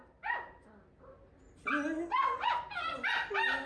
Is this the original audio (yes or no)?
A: yes